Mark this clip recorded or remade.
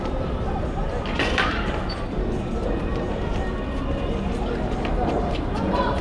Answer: remade